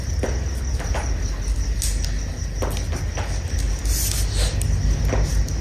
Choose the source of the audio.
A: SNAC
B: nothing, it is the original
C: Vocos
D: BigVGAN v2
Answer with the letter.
B